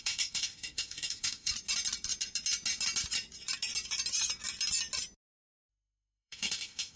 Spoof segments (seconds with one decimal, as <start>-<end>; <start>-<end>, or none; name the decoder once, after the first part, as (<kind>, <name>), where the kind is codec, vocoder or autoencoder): 0.0-1.5 (autoencoder, DAC-VAE); 5.7-7.0